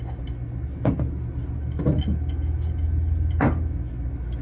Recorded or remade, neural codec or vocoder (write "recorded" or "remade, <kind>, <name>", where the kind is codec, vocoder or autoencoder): recorded